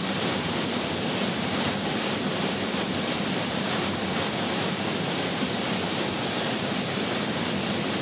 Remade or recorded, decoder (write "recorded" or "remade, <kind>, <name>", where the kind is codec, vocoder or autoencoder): remade, vocoder, BigVGAN v2